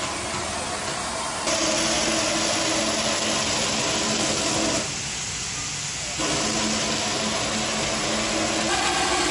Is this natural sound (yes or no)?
yes